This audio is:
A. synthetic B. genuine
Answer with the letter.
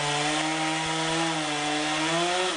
B